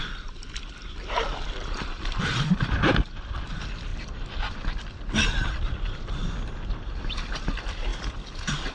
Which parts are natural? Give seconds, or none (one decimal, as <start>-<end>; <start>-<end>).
3.9-5.5; 6.2-7.0; 7.9-8.7